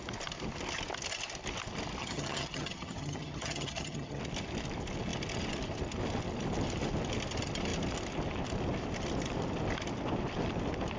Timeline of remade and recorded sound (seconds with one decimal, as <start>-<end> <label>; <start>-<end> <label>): 0.0-2.0 recorded; 2.0-4.2 remade; 4.2-11.0 recorded

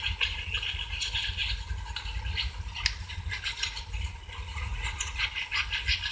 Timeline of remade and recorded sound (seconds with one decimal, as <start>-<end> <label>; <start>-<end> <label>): 0.0-4.5 recorded; 4.5-5.2 remade; 5.2-6.1 recorded

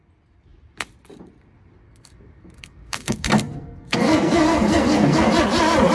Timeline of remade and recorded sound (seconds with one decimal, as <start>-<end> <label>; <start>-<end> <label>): 0.0-1.8 recorded; 1.8-5.3 remade; 5.3-5.9 recorded

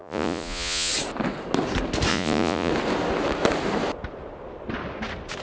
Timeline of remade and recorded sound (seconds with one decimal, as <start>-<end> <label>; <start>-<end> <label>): 0.0-0.9 remade; 0.9-2.1 recorded; 2.1-2.7 remade; 2.7-5.4 recorded

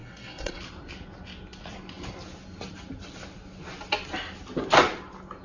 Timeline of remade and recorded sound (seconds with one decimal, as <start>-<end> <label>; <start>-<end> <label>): 0.0-0.6 remade; 0.6-5.4 recorded

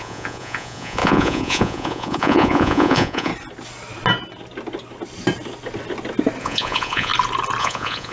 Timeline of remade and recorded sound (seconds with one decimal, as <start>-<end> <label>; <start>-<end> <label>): 0.0-3.3 remade; 3.3-6.4 recorded; 6.4-7.1 remade; 7.1-7.6 recorded; 7.6-8.1 remade

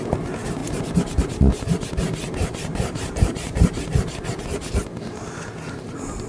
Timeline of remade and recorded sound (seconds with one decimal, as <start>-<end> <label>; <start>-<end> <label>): 0.0-0.6 recorded; 0.6-4.4 remade; 4.4-6.3 recorded